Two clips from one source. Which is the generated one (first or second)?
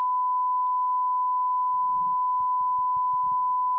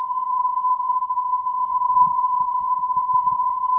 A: second